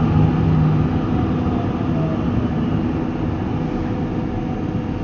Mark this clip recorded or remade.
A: recorded